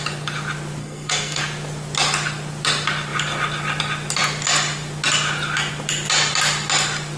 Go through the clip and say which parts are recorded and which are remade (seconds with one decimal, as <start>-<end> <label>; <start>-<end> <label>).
0.0-0.8 recorded; 0.8-1.4 remade; 1.4-7.2 recorded